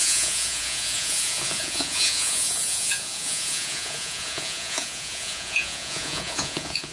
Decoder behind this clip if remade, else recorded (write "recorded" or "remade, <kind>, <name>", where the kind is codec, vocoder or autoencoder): remade, vocoder, Vocos